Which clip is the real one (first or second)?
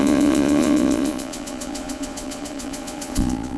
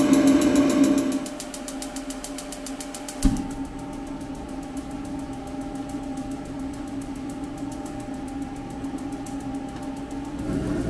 second